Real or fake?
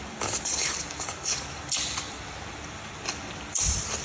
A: fake